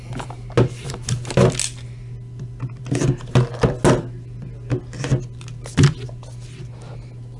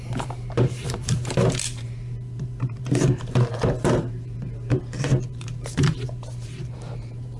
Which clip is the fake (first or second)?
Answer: second